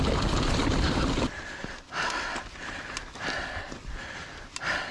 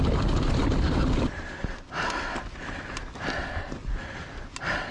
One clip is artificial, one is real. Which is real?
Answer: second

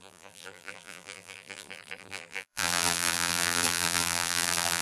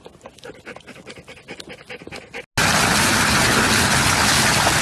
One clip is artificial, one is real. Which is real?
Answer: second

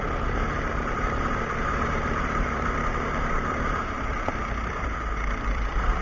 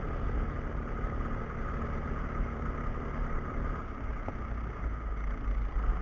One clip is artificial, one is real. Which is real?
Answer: second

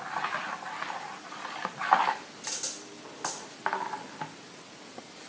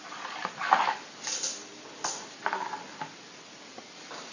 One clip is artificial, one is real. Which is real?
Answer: first